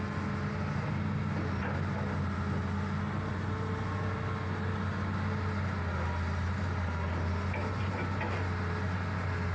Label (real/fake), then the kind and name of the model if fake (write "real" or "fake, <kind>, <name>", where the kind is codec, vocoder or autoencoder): real